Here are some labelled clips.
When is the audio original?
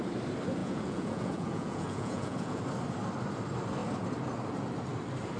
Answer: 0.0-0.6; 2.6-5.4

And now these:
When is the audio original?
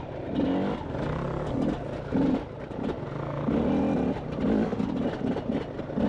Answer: 0.0-6.1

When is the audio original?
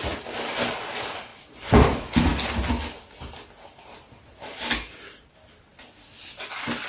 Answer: 0.0-6.9